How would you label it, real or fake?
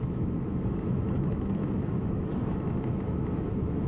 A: fake